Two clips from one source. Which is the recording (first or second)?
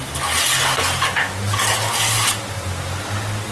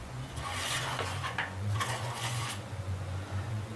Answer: first